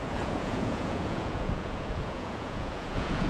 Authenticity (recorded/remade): remade